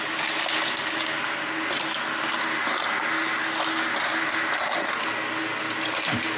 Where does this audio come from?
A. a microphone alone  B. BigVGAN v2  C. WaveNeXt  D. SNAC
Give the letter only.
A